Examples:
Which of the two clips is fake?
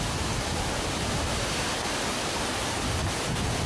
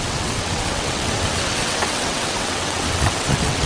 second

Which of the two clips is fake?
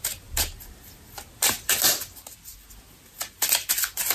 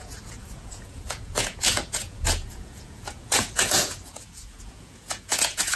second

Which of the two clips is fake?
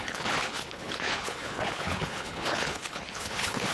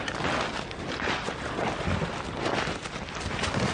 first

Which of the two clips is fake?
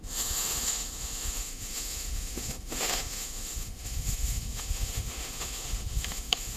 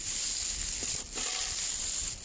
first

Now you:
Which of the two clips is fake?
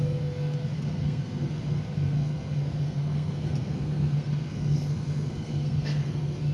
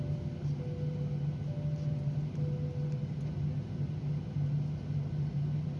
first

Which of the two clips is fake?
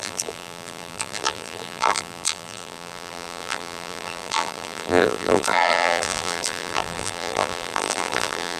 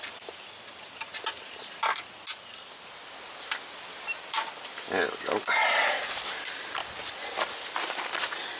first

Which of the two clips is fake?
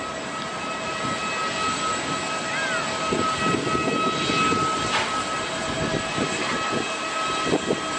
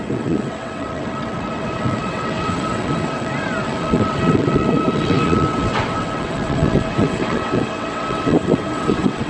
second